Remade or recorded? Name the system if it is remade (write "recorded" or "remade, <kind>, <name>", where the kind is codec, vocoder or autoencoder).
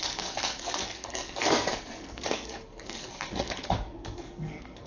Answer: remade, codec, SNAC